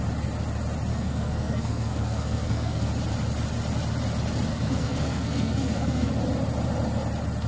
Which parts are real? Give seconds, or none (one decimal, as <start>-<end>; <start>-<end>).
0.0-0.9; 2.9-4.5; 6.1-7.5